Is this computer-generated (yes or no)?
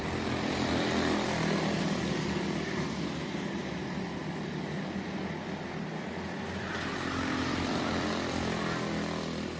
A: no